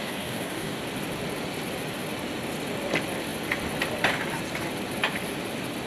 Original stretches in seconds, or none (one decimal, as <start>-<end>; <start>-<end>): 0.8-5.9